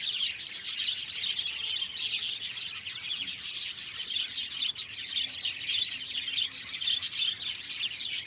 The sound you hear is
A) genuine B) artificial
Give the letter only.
A